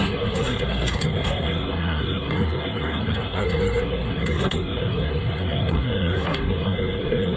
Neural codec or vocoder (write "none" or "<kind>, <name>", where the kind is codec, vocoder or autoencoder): codec, SNAC